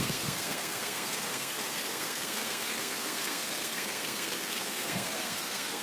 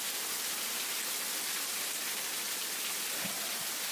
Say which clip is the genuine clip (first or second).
second